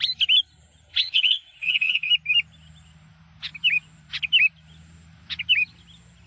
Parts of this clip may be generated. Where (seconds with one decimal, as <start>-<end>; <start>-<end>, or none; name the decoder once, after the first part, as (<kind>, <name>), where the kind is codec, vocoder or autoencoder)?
0.9-2.1 (vocoder, WaveNeXt)